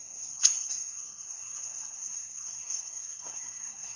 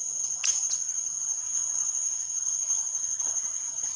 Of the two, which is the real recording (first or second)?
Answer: second